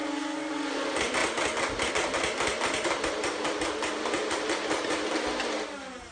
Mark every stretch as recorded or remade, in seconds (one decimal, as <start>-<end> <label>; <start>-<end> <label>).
0.0-6.1 recorded